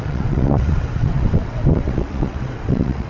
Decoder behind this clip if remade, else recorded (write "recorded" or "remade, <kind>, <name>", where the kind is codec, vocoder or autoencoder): remade, vocoder, WaveNeXt